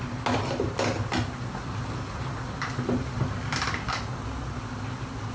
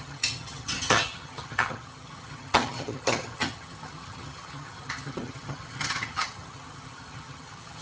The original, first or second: first